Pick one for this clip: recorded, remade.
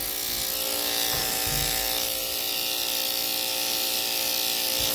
recorded